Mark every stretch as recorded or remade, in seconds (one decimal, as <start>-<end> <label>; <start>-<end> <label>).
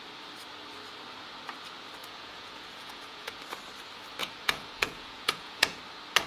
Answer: 0.0-2.0 recorded; 2.0-3.4 remade; 3.4-4.2 recorded; 4.2-5.8 remade; 5.8-6.3 recorded